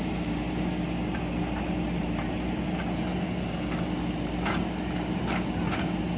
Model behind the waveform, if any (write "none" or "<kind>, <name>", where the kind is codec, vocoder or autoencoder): none